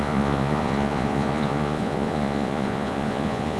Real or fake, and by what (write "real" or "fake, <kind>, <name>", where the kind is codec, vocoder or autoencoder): fake, vocoder, Vocos